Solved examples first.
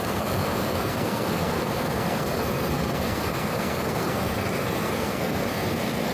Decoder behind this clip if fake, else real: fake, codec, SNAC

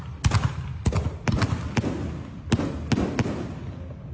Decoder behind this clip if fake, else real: real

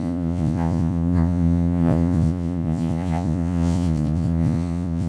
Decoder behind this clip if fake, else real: fake, vocoder, Vocos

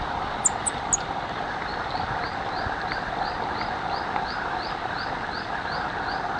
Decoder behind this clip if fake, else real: real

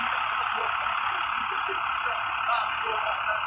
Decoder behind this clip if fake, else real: real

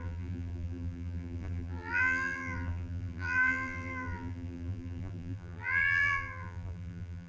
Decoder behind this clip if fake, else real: fake, vocoder, BigVGAN v2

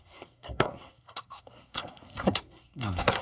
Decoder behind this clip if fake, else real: fake, codec, SNAC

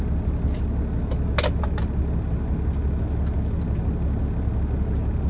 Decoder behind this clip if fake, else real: real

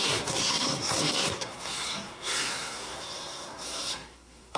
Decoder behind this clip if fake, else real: fake, codec, SNAC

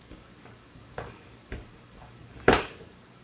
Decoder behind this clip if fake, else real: fake, codec, DAC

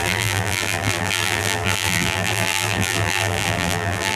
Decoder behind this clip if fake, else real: fake, vocoder, BigVGAN v2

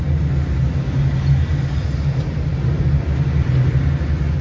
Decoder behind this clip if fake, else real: real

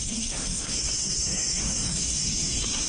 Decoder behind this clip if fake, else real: fake, codec, SNAC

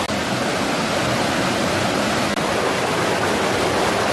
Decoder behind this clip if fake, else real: real